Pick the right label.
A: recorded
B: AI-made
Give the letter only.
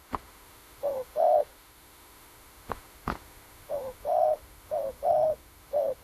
B